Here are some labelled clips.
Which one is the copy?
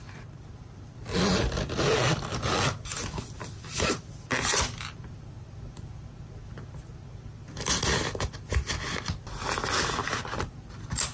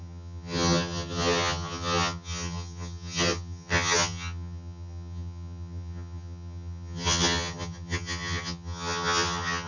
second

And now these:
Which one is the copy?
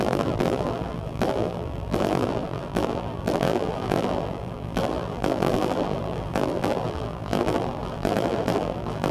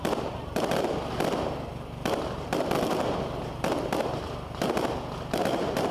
first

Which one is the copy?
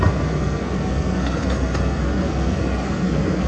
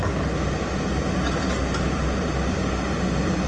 first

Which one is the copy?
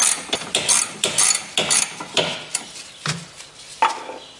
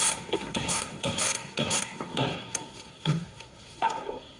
second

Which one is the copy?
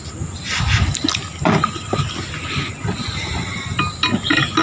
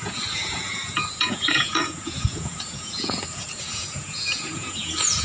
second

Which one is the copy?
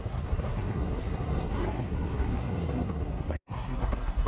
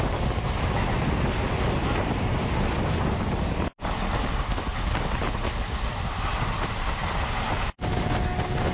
first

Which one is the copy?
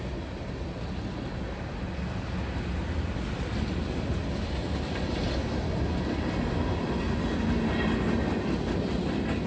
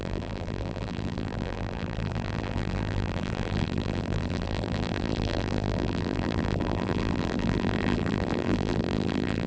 second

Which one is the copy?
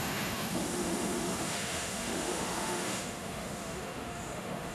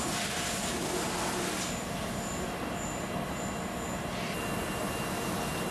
first